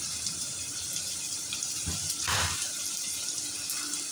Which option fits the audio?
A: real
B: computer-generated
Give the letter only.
B